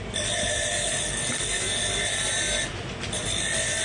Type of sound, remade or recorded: recorded